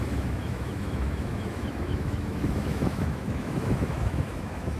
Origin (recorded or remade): remade